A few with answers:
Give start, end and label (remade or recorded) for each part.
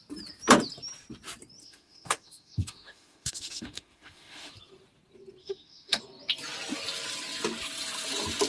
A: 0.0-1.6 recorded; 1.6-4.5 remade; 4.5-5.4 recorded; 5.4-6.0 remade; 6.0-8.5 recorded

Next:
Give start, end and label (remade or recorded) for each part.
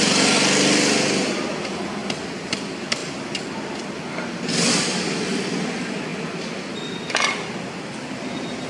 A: 0.0-8.7 recorded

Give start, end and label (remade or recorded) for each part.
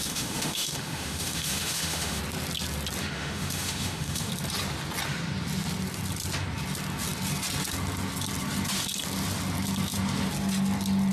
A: 0.0-2.2 remade; 2.2-3.0 recorded; 3.0-4.3 remade; 4.3-11.1 recorded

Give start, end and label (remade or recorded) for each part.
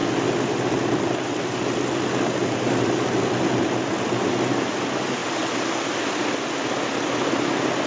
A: 0.0-5.2 recorded; 5.2-6.4 remade; 6.4-7.9 recorded